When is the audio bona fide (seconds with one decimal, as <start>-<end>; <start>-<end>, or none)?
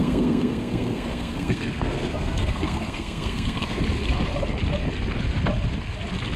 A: 3.8-6.4